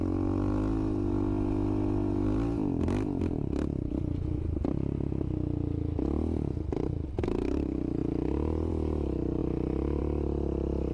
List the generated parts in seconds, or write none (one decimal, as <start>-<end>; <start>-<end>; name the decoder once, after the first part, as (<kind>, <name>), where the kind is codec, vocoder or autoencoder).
none